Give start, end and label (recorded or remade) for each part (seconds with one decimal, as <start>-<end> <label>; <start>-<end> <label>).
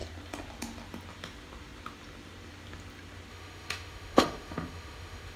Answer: 0.0-3.3 recorded; 3.3-5.4 remade